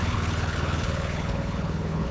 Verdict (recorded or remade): remade